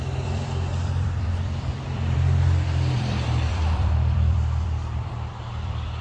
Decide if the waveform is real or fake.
fake